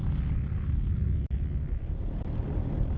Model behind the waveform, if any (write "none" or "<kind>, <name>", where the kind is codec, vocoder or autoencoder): none